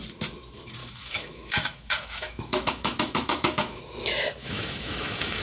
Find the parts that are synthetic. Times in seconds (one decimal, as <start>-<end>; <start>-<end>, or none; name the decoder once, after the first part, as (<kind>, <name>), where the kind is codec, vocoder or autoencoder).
0.8-3.8 (autoencoder, DAC-VAE); 4.4-5.4